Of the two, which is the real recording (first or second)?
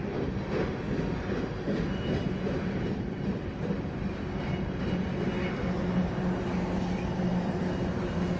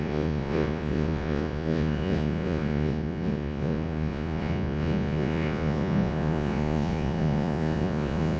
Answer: first